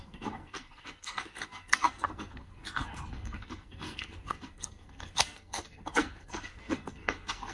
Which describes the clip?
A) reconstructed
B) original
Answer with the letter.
A